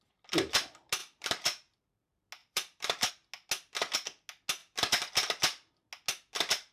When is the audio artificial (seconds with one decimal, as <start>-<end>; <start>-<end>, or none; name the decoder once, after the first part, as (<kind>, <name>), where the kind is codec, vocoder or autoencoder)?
1.0-1.8 (vocoder, BigVGAN v2); 2.4-3.1

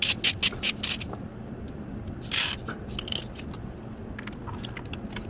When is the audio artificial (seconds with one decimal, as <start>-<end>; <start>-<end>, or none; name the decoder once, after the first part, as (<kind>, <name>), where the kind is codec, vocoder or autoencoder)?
none

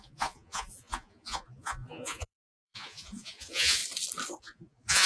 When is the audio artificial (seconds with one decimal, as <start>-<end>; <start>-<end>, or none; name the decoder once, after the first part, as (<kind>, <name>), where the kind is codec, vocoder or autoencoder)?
0.0-3.8 (vocoder, Vocos); 4.4-5.1

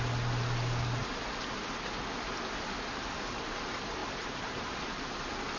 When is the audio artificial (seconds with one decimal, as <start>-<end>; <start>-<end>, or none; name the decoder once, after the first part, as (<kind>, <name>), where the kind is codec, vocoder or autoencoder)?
4.0-5.1 (vocoder, BigVGAN v2)

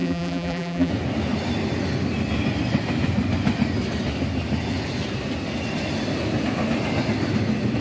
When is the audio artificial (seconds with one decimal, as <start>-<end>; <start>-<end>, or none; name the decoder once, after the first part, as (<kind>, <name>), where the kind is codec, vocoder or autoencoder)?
0.0-0.9 (vocoder, BigVGAN v2)

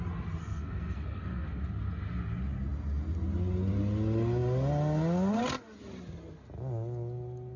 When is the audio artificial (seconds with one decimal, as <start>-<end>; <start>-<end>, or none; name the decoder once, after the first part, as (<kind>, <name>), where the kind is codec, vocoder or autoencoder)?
0.4-1.6 (codec, SNAC)

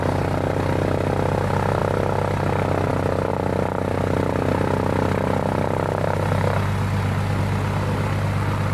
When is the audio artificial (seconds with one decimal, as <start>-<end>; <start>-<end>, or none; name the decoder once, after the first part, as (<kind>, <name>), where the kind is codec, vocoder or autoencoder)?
none